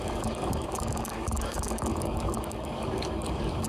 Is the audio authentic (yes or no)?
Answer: no